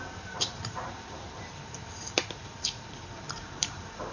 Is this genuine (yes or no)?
no